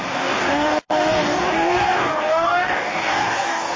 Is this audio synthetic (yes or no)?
yes